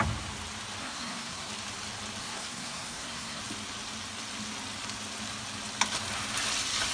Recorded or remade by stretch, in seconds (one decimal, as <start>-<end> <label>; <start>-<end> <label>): 0.0-0.8 recorded; 0.8-1.5 remade; 1.5-2.2 recorded; 2.2-3.4 remade; 3.4-6.9 recorded